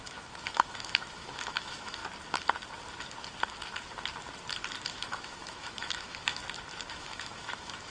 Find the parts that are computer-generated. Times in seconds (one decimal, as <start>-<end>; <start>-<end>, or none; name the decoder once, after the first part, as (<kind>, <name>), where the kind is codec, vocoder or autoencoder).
0.0-2.0 (autoencoder, DAC-VAE); 4.8-6.4; 6.9-7.9